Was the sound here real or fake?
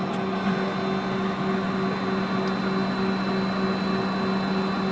real